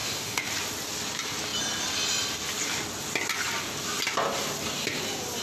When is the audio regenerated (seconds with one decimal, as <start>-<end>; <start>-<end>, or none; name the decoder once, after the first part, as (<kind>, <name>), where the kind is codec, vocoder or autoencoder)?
0.0-0.5 (autoencoder, DAC-VAE)

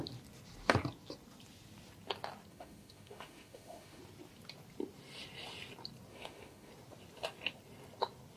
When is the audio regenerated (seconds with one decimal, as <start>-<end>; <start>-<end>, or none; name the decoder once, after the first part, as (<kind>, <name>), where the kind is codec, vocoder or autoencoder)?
2.5-4.0 (autoencoder, DAC-VAE); 6.1-6.7

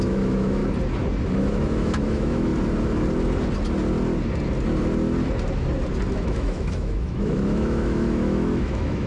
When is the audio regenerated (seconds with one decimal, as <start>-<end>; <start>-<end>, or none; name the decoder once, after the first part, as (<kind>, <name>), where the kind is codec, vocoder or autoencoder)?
0.0-0.6 (autoencoder, DAC-VAE); 1.4-2.5; 6.1-9.1

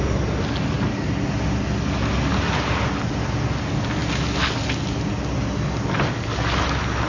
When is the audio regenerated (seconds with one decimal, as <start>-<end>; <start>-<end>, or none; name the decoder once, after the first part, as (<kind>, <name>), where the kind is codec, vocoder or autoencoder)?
none

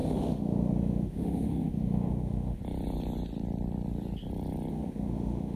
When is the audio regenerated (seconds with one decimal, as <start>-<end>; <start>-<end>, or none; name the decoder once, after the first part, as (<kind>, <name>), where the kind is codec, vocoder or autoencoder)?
0.0-2.6 (autoencoder, DAC-VAE); 4.7-5.6

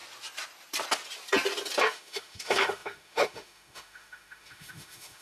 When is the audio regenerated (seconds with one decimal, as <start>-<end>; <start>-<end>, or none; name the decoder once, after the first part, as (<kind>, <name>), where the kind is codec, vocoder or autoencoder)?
1.8-5.2 (autoencoder, DAC-VAE)